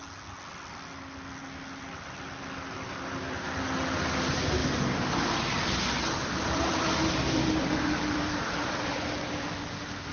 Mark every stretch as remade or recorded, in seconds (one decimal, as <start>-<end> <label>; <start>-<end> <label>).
0.0-4.6 recorded; 4.6-9.6 remade; 9.6-10.1 recorded